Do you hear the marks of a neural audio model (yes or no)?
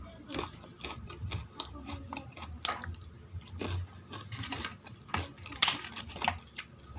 no